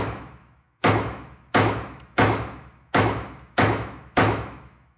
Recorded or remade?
remade